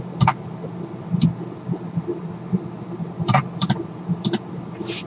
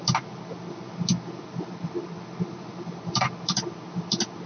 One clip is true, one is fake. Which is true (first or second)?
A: second